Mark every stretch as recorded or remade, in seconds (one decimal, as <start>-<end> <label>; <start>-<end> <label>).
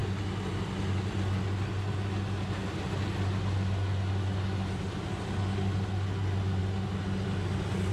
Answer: 0.0-7.9 recorded